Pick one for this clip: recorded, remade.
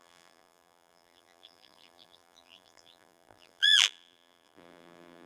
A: remade